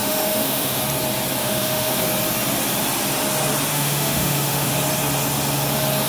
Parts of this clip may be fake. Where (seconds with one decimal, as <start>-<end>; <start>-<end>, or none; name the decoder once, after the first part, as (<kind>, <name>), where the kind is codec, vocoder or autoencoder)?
0.0-0.8 (autoencoder, DAC-VAE); 1.4-2.0; 3.7-4.7